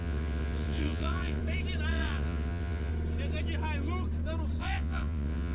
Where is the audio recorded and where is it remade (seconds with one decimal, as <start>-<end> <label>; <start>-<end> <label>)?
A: 0.0-1.4 remade; 1.4-1.9 recorded; 1.9-2.9 remade; 2.9-4.6 recorded; 4.6-5.5 remade